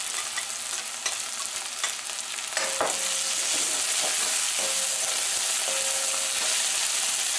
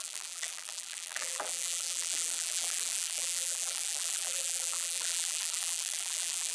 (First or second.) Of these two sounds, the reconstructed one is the second